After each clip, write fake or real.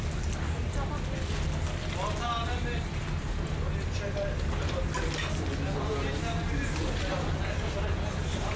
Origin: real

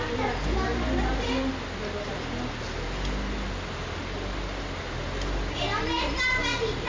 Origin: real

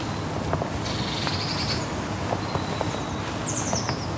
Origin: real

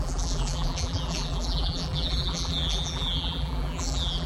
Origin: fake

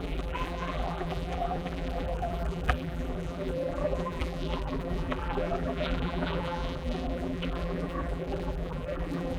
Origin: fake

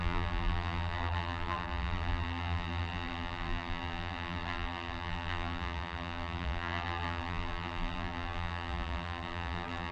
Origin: fake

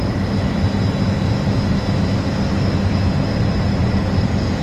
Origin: real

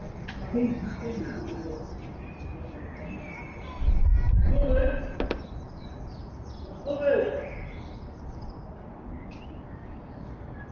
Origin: real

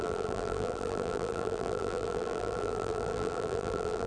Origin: fake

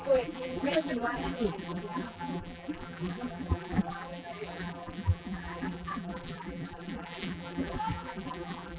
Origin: fake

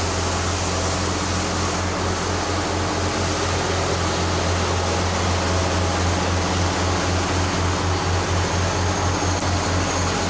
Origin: real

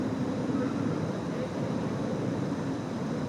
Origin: fake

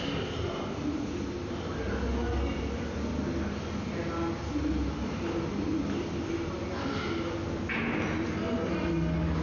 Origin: real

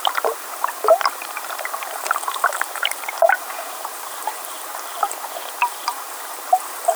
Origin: fake